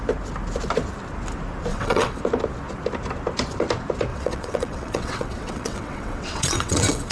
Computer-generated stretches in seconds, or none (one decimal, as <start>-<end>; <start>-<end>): 1.7-2.2; 4.1-7.1